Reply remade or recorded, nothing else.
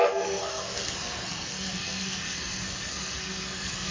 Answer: remade